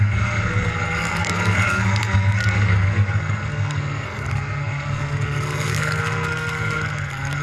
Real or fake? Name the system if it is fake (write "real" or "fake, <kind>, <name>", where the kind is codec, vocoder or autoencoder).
fake, codec, SNAC